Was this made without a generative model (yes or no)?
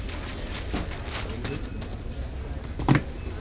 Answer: yes